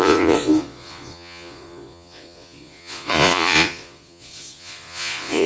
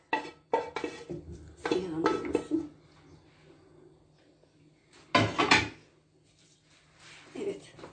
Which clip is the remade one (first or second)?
first